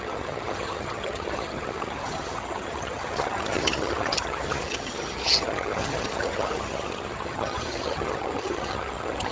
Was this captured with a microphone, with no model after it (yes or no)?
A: no